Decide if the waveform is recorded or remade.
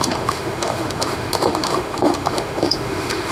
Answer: remade